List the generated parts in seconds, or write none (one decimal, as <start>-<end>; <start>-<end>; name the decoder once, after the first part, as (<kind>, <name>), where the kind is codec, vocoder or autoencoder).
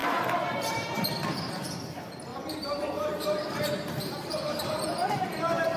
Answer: 0.0-1.1 (vocoder, BigVGAN v2); 2.3-5.8